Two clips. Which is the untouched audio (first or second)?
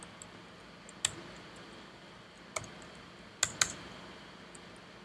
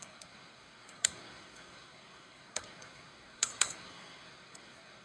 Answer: first